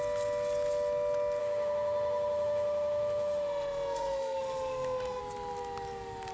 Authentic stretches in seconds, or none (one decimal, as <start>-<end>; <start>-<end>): 0.0-1.4; 5.2-6.3